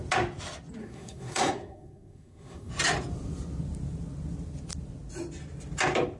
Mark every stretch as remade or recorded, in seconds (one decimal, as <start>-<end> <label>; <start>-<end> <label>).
0.0-0.8 recorded; 0.8-2.7 remade; 2.7-6.2 recorded